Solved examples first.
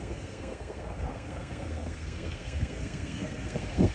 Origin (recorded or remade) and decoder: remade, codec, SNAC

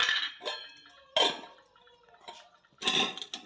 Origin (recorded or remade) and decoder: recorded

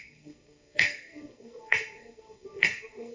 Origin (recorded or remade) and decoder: remade, codec, SNAC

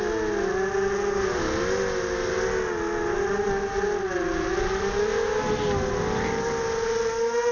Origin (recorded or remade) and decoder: recorded